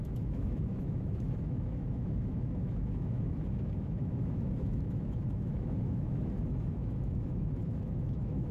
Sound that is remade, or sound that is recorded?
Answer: remade